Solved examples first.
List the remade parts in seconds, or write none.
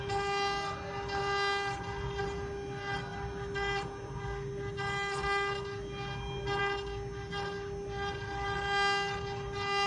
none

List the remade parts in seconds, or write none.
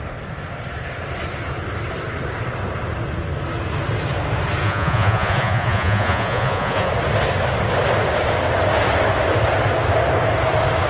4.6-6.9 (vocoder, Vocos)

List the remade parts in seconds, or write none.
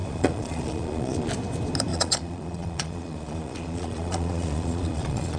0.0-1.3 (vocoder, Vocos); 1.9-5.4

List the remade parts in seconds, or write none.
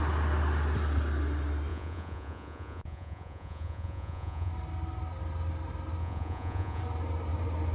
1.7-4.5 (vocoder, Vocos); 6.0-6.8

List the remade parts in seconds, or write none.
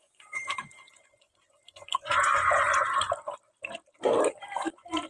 0.0-3.1 (vocoder, Vocos)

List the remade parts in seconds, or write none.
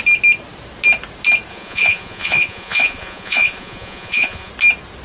1.5-4.5 (vocoder, Vocos)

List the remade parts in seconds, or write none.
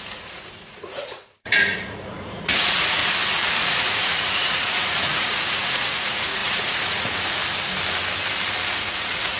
0.0-3.0 (vocoder, Vocos); 3.6-7.4; 8.7-9.4